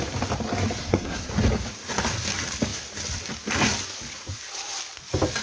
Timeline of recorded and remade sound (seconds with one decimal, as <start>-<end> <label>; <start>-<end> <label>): 0.0-0.8 recorded; 0.8-1.3 remade; 1.3-5.4 recorded

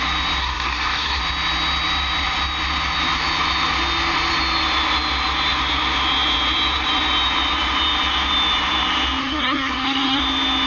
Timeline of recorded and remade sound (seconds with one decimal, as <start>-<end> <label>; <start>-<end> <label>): 0.0-0.4 recorded; 0.4-1.2 remade; 1.2-9.2 recorded; 9.2-10.2 remade; 10.2-10.7 recorded

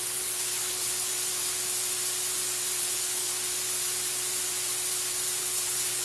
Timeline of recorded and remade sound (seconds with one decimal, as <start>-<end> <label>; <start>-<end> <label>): 0.0-1.1 remade; 1.1-2.8 recorded; 2.8-3.3 remade; 3.3-5.4 recorded; 5.4-6.0 remade

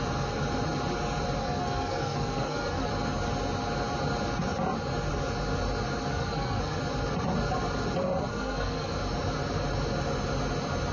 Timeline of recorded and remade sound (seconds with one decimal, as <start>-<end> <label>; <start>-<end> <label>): 0.0-1.4 recorded; 1.4-2.9 remade; 2.9-6.1 recorded; 6.1-6.8 remade; 6.8-8.3 recorded; 8.3-8.9 remade; 8.9-10.9 recorded

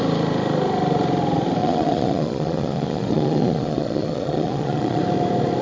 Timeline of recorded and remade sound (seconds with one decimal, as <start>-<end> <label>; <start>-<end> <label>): 0.0-1.6 recorded; 1.6-5.0 remade; 5.0-5.6 recorded

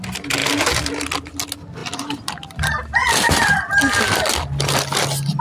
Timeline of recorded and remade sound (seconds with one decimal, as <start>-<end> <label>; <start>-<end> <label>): 0.0-0.4 recorded; 0.4-1.1 remade; 1.1-1.8 recorded; 1.8-4.0 remade; 4.0-5.4 recorded